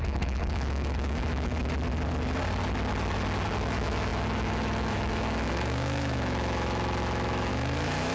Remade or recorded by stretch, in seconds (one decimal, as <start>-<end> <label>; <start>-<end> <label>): 0.0-1.5 remade; 1.5-3.5 recorded; 3.5-8.1 remade

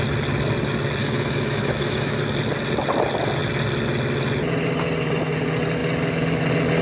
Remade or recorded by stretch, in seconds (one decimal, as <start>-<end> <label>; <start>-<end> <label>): 0.0-1.0 recorded; 1.0-2.2 remade; 2.2-6.8 recorded

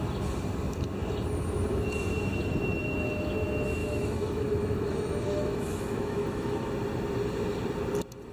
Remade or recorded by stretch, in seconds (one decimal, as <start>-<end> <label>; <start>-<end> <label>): 0.0-3.8 recorded; 3.8-6.7 remade; 6.7-8.3 recorded